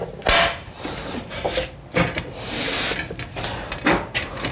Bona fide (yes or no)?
yes